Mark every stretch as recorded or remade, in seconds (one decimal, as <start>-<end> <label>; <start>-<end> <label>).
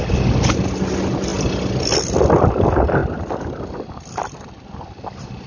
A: 0.0-5.5 recorded